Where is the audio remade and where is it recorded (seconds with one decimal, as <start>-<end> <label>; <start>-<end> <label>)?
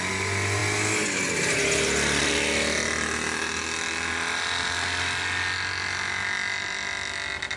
0.0-7.6 recorded